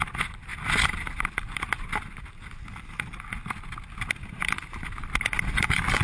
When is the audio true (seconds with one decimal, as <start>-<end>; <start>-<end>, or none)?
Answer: 0.0-6.0